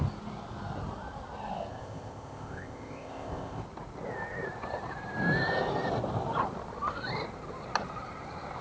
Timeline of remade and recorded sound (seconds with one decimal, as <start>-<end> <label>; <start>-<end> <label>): 0.0-1.7 recorded; 1.7-3.6 remade; 3.6-8.6 recorded